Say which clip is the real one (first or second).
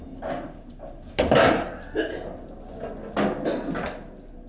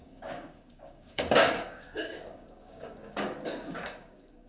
first